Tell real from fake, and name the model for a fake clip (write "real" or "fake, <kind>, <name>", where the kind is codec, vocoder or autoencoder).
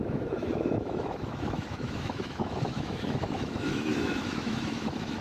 fake, autoencoder, DAC-VAE